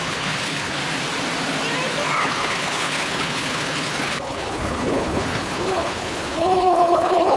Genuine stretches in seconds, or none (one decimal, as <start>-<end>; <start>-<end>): 0.8-2.2